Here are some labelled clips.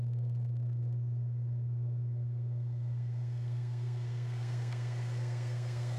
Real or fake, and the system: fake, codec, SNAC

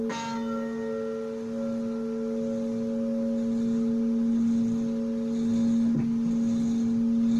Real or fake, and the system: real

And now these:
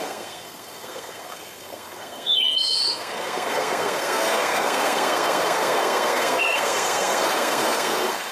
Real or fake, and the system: fake, codec, SNAC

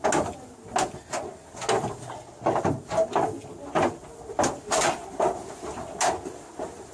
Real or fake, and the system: real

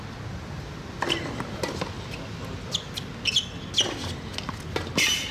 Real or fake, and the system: real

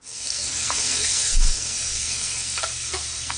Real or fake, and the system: fake, codec, SNAC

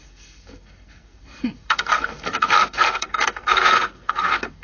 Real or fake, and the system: fake, codec, SNAC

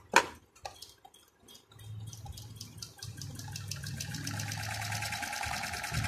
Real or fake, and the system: real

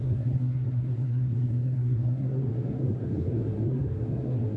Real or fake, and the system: fake, codec, SNAC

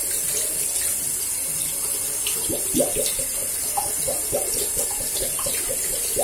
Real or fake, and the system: real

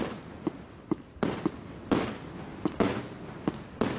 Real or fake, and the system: real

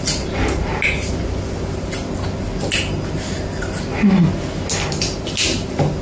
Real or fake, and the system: real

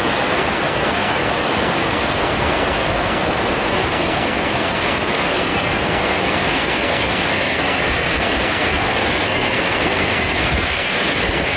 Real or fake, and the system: fake, codec, SNAC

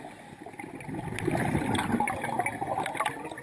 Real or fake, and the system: real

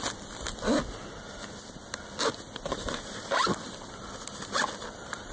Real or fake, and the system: real